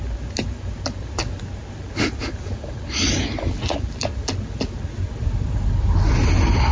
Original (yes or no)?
yes